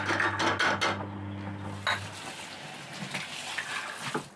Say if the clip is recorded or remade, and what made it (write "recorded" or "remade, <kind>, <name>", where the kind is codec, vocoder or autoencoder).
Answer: recorded